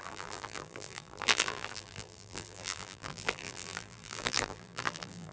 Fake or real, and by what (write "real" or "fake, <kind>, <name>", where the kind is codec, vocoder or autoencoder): fake, vocoder, BigVGAN v2